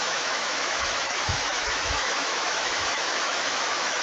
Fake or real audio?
fake